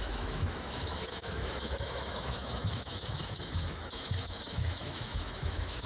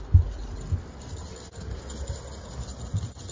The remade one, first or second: first